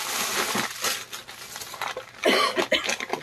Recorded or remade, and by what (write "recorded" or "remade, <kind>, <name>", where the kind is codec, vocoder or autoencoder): recorded